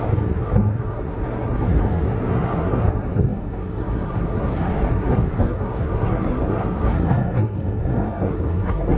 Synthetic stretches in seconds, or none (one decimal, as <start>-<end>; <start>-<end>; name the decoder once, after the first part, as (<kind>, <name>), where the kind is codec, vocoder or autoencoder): 0.0-9.0 (codec, SNAC)